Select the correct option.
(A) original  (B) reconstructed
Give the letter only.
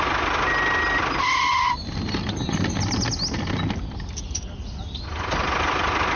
A